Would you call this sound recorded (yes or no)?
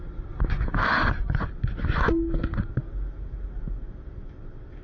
yes